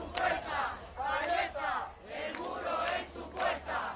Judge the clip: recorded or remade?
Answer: recorded